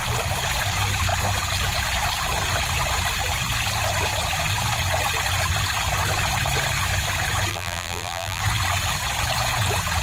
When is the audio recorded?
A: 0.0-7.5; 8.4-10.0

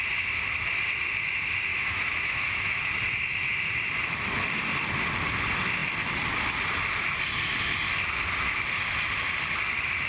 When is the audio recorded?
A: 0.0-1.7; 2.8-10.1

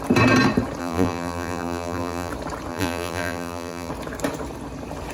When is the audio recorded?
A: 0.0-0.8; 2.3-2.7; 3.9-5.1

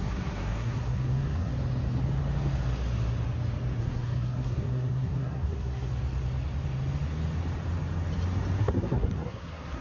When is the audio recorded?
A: 1.5-3.8; 5.9-8.6